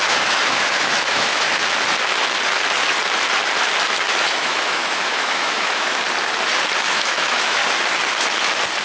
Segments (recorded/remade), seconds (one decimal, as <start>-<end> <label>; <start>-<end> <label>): 0.0-1.6 remade; 1.6-4.2 recorded; 4.2-6.0 remade; 6.0-6.8 recorded; 6.8-7.6 remade; 7.6-8.8 recorded